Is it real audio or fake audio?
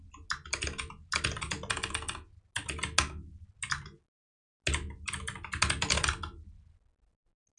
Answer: real